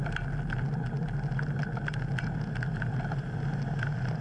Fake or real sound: real